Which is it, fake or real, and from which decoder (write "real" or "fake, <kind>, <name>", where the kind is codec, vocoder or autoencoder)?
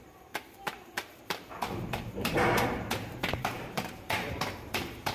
fake, vocoder, BigVGAN v2